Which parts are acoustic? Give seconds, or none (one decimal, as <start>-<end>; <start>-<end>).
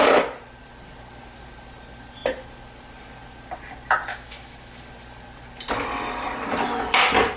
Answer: 0.0-4.1; 4.8-7.4